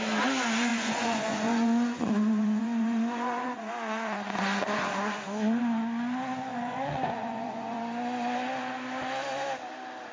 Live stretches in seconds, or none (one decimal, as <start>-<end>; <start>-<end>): 0.0-0.7; 5.6-6.5; 7.8-10.1